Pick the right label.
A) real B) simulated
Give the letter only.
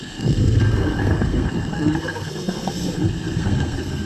B